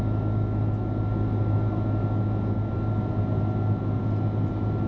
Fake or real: real